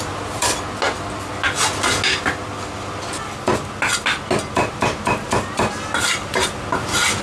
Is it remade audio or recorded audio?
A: recorded